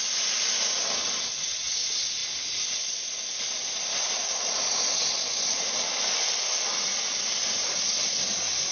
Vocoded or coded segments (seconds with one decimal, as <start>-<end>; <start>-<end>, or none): none